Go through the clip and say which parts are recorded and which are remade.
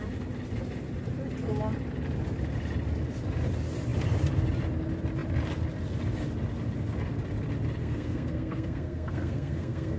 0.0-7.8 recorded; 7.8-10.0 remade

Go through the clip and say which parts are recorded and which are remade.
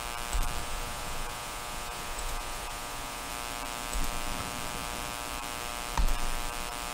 0.0-0.6 recorded; 0.6-3.3 remade; 3.3-6.9 recorded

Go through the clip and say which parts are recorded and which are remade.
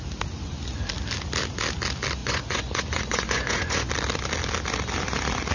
0.0-2.2 recorded; 2.2-3.9 remade; 3.9-5.5 recorded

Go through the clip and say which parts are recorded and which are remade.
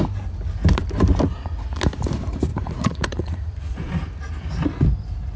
0.0-2.5 recorded; 2.5-3.9 remade; 3.9-5.4 recorded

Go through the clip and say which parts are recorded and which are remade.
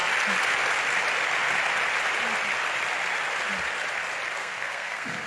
0.0-4.4 recorded; 4.4-5.3 remade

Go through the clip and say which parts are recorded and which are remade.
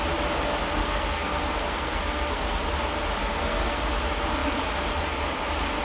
0.0-0.8 recorded; 0.8-2.6 remade; 2.6-3.2 recorded; 3.2-3.8 remade; 3.8-5.8 recorded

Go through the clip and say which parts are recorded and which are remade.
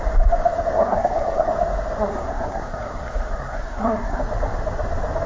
0.0-0.7 recorded; 0.7-1.5 remade; 1.5-2.1 recorded; 2.1-4.2 remade; 4.2-5.3 recorded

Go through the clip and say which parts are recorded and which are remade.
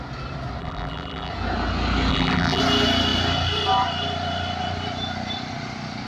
0.0-0.6 recorded; 0.6-1.3 remade; 1.3-2.1 recorded; 2.1-2.6 remade; 2.6-6.1 recorded